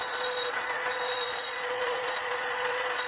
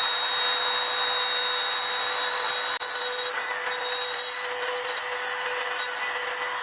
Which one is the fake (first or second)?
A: first